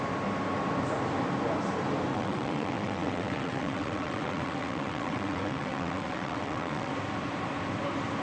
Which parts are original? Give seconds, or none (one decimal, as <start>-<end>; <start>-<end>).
0.0-2.1; 6.9-8.2